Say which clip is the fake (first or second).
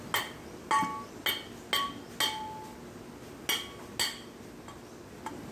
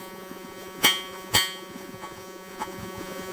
second